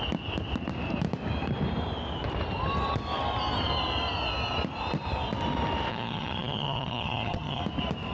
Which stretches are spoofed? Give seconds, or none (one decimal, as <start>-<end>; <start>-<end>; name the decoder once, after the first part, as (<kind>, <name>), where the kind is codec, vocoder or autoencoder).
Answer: 5.9-7.6 (vocoder, HiFi-GAN)